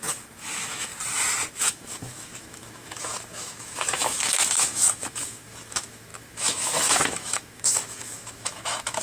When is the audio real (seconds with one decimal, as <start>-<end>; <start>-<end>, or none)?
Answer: 0.9-1.5